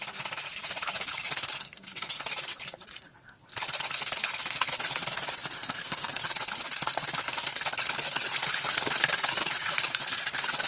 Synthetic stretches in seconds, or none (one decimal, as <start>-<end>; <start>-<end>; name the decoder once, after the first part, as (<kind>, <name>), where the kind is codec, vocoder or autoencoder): 1.6-2.2 (codec, SNAC); 5.6-6.2